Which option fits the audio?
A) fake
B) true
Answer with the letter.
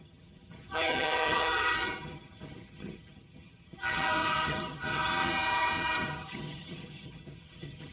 A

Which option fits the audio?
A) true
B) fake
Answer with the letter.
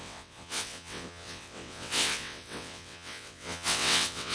B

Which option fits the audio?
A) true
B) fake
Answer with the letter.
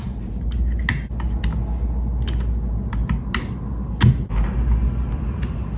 A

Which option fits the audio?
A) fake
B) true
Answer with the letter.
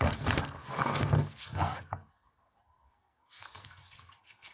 A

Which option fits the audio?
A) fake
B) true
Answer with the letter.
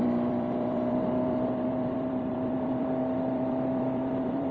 A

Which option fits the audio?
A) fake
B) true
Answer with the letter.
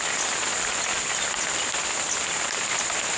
B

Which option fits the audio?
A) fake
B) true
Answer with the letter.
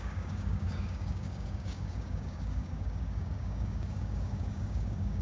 A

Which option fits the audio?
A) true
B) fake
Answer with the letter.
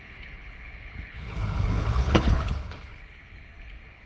B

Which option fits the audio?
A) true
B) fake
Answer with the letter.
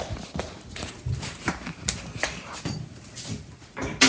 A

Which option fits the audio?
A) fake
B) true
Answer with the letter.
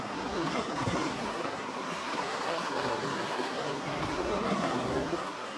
A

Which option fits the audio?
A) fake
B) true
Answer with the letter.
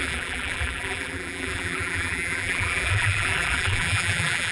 A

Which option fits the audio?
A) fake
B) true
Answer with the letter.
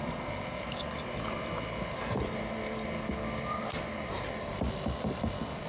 B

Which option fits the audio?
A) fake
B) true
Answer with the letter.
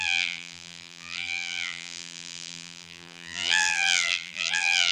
A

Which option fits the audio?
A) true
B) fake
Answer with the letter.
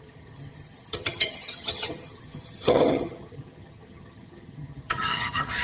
B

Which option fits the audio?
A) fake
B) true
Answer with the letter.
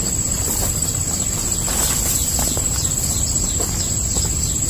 A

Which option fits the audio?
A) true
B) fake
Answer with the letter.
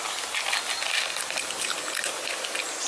B